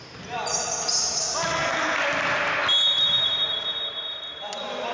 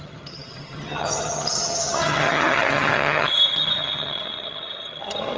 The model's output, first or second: second